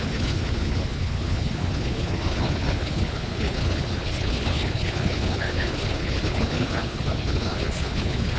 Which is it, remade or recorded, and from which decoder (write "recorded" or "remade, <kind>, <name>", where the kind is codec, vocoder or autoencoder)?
remade, codec, HILCodec